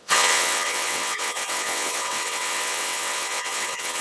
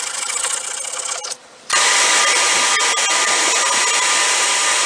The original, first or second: second